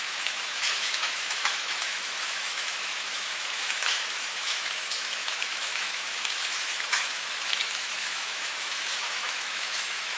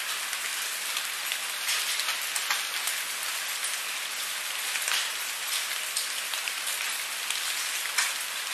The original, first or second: second